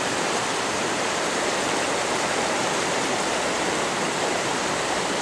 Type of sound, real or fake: fake